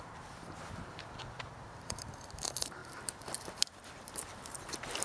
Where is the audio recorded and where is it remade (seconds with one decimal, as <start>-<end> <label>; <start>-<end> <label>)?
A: 0.0-5.0 remade